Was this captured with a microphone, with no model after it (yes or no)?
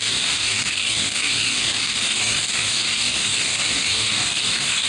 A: no